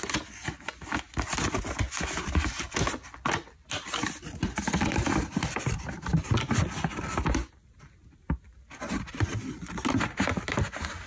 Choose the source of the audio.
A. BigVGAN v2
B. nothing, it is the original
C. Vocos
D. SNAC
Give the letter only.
B